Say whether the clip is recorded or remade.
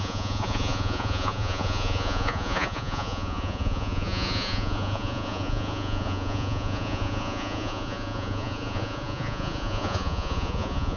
remade